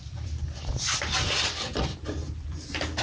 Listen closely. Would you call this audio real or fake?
fake